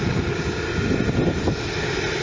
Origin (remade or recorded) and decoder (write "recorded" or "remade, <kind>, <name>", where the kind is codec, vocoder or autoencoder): recorded